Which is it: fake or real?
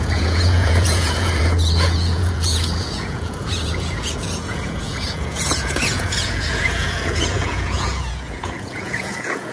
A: fake